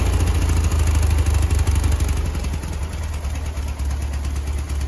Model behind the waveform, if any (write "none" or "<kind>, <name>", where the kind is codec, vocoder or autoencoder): none